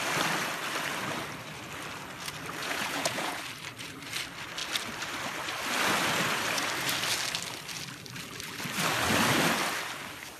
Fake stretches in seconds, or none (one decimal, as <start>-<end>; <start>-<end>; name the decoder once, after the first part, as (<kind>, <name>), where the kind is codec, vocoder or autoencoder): 2.6-3.4 (vocoder, Vocos)